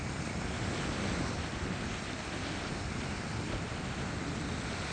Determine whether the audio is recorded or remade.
recorded